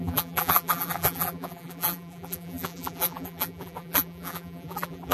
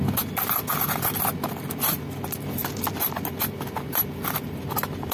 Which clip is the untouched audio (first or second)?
second